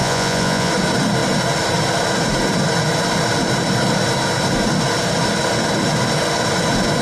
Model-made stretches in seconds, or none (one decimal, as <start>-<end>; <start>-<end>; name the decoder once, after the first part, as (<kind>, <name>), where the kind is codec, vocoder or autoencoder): 0.0-0.7 (vocoder, Vocos)